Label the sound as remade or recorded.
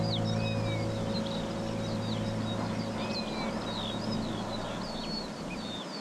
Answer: recorded